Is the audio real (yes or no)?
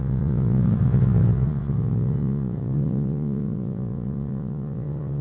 no